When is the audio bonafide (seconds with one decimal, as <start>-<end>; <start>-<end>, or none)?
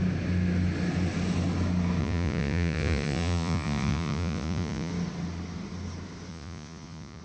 0.0-2.0; 4.9-6.3